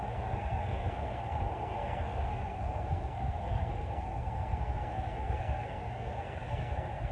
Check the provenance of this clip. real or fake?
fake